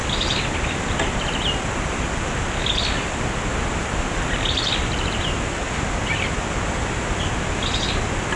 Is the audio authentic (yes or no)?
yes